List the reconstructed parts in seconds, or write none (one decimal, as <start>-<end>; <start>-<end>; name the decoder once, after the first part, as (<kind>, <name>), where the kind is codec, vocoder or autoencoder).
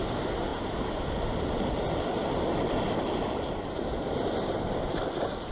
none